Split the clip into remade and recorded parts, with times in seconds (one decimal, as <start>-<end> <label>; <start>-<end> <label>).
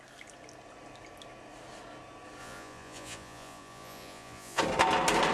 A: 0.0-2.4 recorded; 2.4-4.6 remade; 4.6-5.3 recorded